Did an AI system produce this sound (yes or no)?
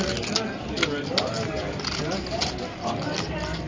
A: no